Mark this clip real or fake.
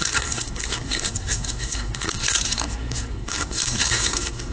fake